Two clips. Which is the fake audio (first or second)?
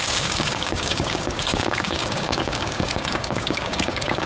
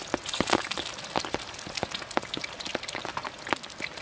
first